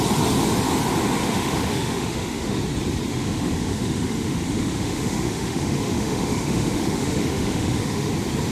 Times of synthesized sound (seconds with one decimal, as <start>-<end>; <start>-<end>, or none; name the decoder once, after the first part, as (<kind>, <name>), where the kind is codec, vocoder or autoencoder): 1.2-2.6 (autoencoder, DAC-VAE); 3.1-8.1